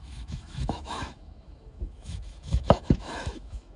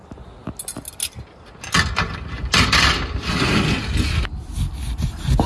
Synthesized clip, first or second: first